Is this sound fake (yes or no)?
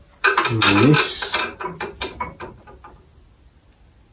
no